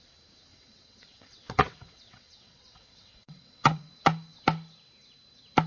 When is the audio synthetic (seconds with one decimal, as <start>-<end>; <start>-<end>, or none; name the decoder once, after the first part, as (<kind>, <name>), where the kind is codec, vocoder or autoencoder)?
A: 0.5-3.9 (vocoder, WaveNeXt)